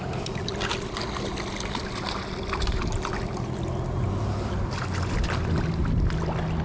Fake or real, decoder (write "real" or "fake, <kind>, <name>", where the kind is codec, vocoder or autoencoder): real